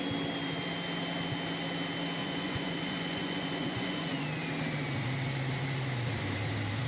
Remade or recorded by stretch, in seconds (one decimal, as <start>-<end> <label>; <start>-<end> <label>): 0.0-2.2 recorded; 2.2-4.2 remade; 4.2-6.9 recorded